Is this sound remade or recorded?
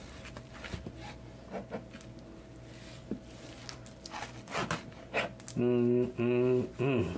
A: recorded